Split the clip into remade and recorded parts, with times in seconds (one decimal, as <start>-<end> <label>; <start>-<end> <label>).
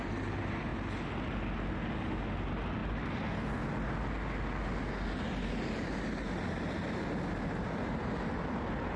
0.0-9.0 recorded